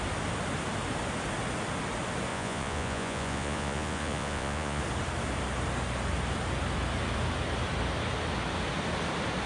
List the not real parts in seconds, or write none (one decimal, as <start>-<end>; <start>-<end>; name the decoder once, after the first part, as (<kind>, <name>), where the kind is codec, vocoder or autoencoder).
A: 2.3-4.8 (vocoder, Vocos)

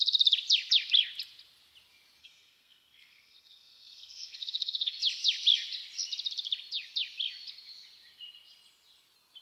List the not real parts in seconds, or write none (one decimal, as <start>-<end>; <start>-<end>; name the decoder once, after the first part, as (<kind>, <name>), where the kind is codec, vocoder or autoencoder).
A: 2.2-5.0 (codec, SNAC)

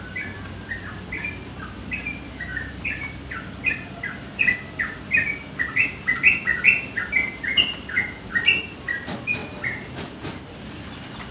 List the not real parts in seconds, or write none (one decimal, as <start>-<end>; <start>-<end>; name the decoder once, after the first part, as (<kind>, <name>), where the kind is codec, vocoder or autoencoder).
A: none

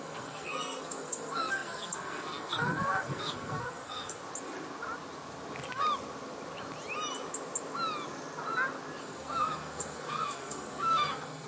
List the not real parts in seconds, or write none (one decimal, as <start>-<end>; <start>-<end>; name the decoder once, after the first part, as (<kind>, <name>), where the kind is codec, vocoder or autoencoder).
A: 0.0-4.2 (codec, SNAC); 9.0-11.5

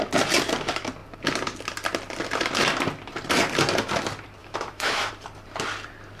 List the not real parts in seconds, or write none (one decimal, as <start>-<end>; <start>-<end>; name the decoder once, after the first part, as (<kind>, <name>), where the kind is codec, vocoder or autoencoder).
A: 4.4-5.1 (autoencoder, DAC-VAE)

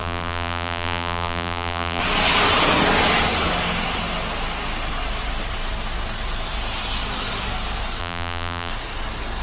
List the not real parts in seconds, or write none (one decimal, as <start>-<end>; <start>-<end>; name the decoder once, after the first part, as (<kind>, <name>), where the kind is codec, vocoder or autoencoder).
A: 0.0-2.0 (vocoder, BigVGAN v2); 8.0-8.7

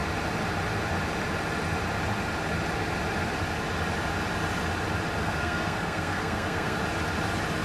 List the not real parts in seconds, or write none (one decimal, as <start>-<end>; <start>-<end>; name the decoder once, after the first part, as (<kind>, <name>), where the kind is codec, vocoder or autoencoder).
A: 5.2-6.8 (codec, SNAC)

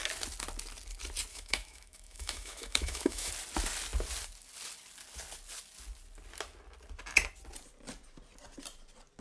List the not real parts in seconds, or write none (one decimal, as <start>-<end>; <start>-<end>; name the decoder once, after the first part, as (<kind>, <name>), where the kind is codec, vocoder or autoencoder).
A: 1.3-3.3 (autoencoder, DAC-VAE)